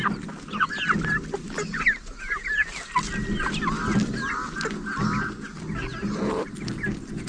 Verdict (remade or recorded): recorded